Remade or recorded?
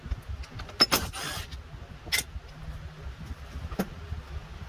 recorded